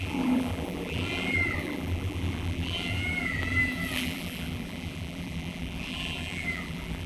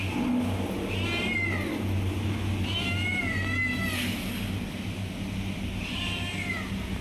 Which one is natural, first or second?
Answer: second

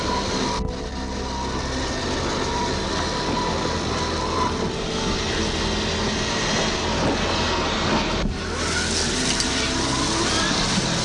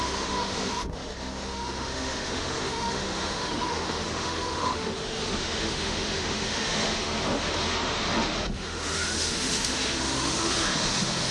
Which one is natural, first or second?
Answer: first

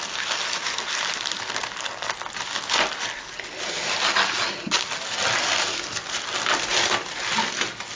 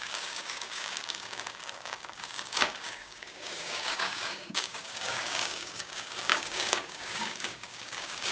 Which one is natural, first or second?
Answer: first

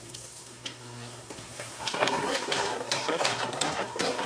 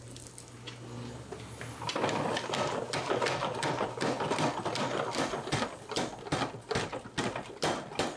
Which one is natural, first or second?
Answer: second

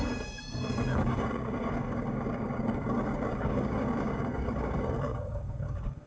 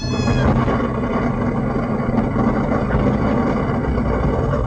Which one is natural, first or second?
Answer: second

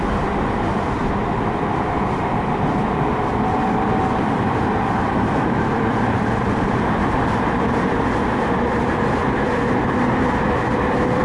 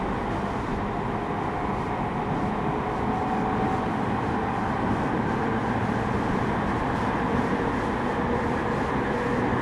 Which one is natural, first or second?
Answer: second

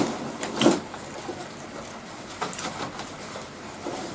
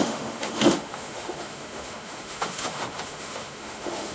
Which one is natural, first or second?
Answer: first